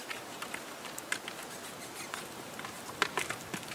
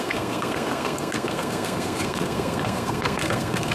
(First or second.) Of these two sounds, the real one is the first